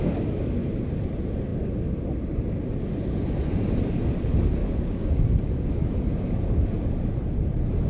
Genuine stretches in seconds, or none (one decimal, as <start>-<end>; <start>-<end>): 0.0-4.6; 5.3-7.9